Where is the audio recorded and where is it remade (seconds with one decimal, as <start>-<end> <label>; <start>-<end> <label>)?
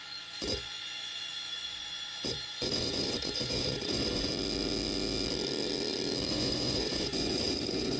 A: 0.0-4.3 remade; 4.3-6.3 recorded; 6.3-8.0 remade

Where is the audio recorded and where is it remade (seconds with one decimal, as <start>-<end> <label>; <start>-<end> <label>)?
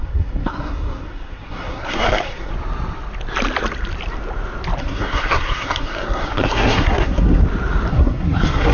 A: 0.0-2.5 remade; 2.5-4.8 recorded; 4.8-7.4 remade; 7.4-7.9 recorded; 7.9-8.7 remade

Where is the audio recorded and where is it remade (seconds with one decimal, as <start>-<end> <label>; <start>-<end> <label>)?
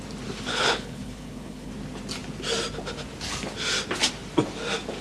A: 0.0-0.5 recorded; 0.5-1.7 remade; 1.7-5.0 recorded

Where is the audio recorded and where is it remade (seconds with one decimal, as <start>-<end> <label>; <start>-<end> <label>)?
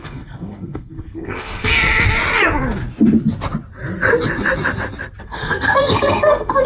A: 0.0-1.7 remade; 1.7-5.2 recorded; 5.2-6.7 remade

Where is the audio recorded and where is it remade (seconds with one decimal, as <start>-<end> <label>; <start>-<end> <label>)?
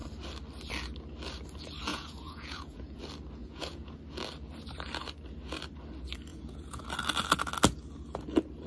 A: 0.0-1.9 recorded; 1.9-3.0 remade; 3.0-3.4 recorded; 3.4-4.0 remade; 4.0-6.3 recorded; 6.3-6.9 remade; 6.9-8.7 recorded